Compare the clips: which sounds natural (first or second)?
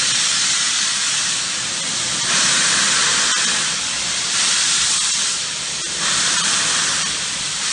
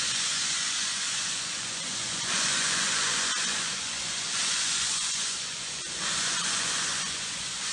first